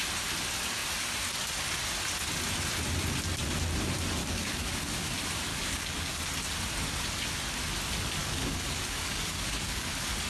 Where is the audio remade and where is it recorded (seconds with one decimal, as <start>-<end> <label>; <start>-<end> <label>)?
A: 0.0-4.2 recorded; 4.2-5.1 remade; 5.1-5.5 recorded; 5.5-6.2 remade; 6.2-8.2 recorded; 8.2-9.9 remade; 9.9-10.3 recorded